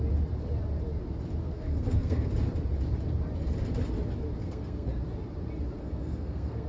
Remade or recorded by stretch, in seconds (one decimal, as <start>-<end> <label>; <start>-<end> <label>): 0.0-1.4 recorded; 1.4-2.3 remade; 2.3-4.4 recorded; 4.4-4.9 remade; 4.9-5.8 recorded; 5.8-6.7 remade